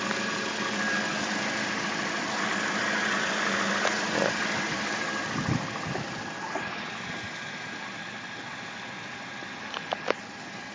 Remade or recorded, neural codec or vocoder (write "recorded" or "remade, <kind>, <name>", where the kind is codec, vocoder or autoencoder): recorded